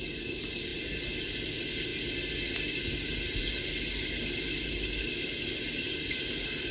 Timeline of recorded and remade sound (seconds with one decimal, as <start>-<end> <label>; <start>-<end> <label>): 0.0-6.7 recorded